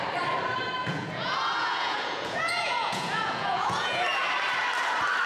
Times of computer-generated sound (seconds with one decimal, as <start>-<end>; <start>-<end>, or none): 0.8-4.0